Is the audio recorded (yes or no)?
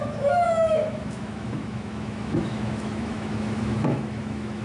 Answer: no